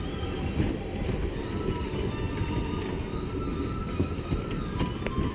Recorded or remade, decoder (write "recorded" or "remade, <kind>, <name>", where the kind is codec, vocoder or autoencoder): recorded